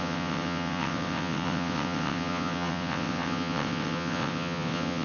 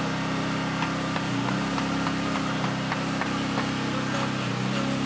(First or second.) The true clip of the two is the second